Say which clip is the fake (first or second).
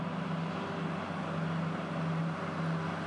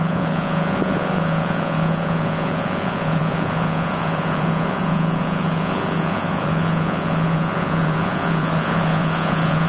second